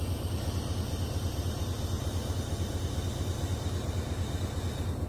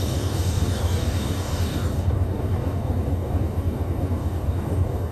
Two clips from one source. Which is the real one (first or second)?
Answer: first